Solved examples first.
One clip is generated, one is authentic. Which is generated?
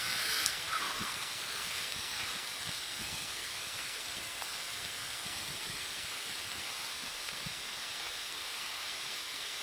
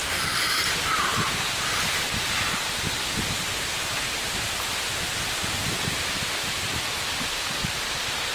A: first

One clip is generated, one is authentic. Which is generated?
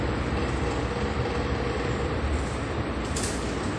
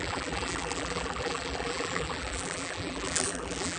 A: second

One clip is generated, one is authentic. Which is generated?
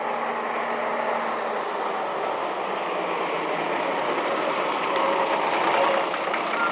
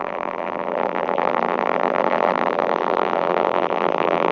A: second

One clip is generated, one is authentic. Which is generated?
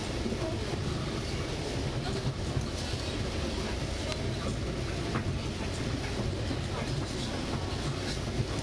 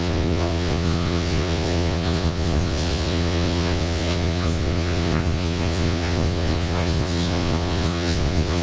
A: second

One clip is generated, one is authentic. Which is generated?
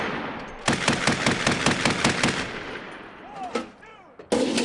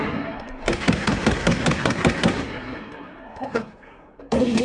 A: second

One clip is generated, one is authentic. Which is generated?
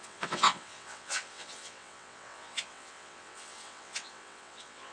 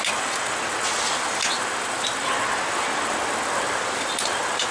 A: first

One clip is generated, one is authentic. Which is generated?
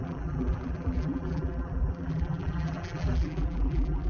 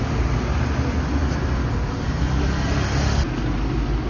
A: first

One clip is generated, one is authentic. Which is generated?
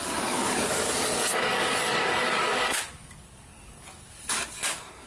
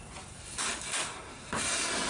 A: first